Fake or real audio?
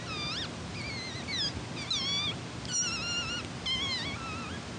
real